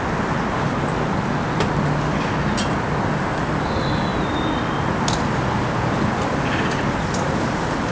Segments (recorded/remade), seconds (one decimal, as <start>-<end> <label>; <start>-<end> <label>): 0.0-7.9 recorded